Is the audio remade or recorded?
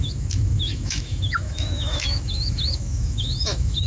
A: remade